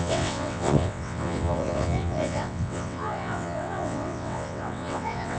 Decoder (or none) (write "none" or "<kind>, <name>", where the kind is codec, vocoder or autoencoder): vocoder, WaveNeXt